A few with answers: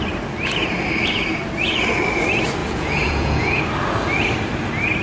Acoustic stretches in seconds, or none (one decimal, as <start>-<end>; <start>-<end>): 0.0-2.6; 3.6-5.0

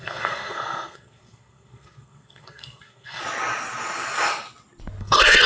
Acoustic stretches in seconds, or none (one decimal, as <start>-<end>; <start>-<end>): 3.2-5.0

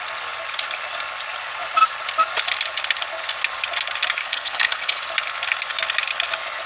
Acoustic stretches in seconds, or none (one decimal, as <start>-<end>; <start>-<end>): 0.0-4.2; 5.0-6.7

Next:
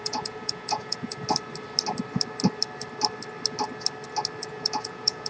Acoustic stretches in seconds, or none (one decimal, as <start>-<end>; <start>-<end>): 1.2-4.4